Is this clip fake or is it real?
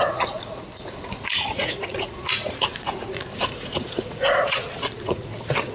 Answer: fake